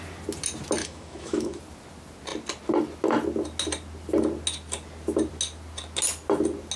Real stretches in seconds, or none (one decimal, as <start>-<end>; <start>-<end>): 0.0-0.8; 1.6-6.8